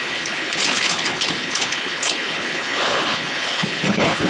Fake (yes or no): yes